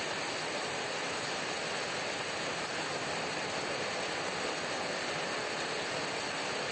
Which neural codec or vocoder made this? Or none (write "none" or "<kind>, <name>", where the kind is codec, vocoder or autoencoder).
none